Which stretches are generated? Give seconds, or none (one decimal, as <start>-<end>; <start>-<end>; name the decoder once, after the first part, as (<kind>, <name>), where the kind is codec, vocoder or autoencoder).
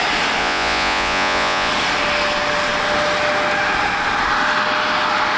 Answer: 0.4-1.7 (vocoder, Vocos)